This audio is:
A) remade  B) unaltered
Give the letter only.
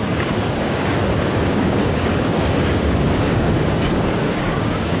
A